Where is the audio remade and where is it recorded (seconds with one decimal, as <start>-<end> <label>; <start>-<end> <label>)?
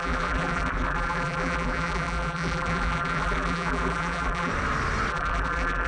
0.0-4.5 remade; 4.5-5.1 recorded; 5.1-5.9 remade